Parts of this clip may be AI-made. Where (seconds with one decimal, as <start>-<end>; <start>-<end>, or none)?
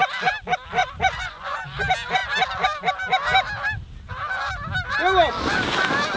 0.8-1.8